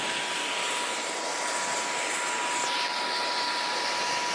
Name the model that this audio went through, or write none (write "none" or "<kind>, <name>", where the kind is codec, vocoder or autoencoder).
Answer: none